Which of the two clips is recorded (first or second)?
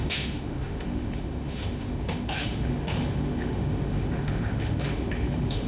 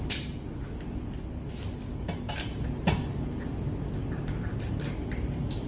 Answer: second